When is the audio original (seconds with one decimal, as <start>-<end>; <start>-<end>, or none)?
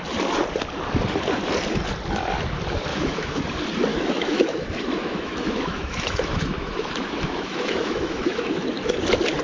0.0-2.9; 3.4-3.9; 8.9-9.4